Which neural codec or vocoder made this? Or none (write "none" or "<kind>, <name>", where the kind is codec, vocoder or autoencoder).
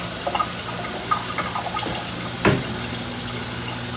none